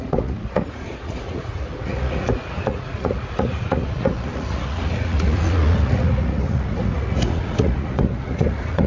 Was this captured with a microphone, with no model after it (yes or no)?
no